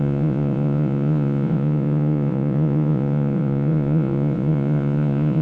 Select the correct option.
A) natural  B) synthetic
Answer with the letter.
B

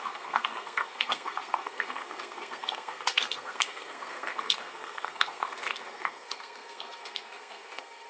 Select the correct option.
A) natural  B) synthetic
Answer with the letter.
B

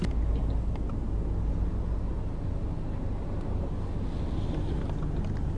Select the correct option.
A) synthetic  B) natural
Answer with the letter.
B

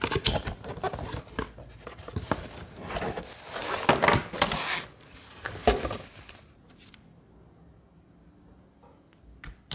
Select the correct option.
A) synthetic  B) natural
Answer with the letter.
B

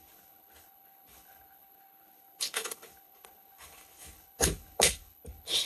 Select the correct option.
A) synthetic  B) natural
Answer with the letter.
A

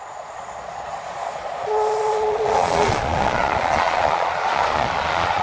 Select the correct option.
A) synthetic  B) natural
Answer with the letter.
A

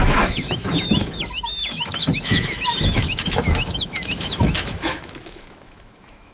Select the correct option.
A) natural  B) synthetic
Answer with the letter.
B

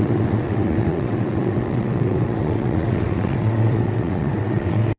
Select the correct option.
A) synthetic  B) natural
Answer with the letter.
A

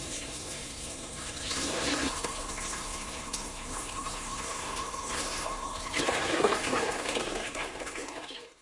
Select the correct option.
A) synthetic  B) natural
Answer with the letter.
A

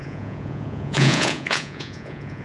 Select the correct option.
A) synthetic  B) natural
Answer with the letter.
A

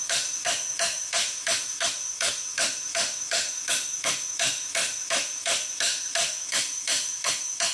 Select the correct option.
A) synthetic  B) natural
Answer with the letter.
A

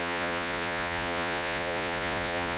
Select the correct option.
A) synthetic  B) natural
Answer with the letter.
A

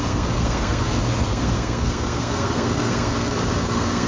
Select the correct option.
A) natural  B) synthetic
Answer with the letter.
B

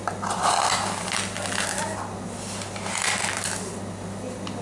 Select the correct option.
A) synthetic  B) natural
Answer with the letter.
B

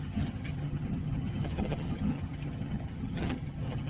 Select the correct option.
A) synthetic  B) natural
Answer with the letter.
A